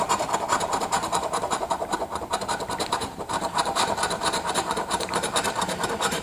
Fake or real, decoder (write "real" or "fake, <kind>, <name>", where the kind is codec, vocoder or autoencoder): fake, vocoder, BigVGAN v2